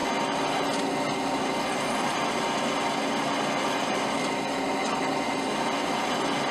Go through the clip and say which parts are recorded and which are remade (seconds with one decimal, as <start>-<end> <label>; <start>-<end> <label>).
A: 0.0-6.5 recorded